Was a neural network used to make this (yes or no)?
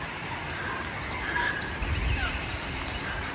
no